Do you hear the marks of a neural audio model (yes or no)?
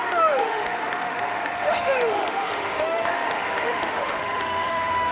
yes